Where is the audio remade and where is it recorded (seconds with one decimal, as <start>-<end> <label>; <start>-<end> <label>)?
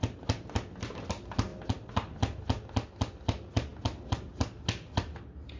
0.0-5.6 recorded